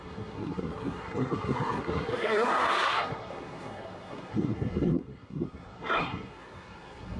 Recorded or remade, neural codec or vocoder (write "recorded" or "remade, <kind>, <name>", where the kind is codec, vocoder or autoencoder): remade, codec, SNAC